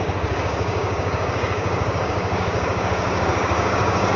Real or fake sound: fake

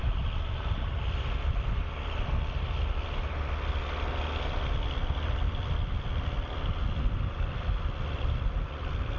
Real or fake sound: real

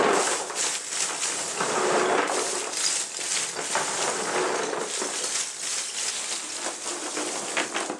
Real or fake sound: real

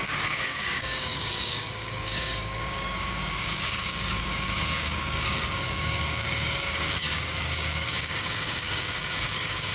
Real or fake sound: fake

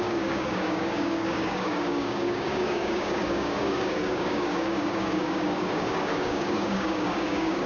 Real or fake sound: fake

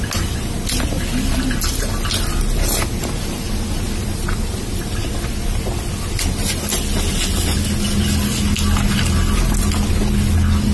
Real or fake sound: real